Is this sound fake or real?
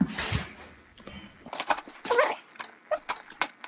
real